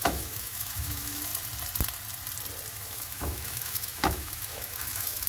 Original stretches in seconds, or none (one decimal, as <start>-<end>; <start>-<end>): 1.3-2.7